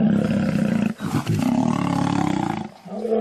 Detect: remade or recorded recorded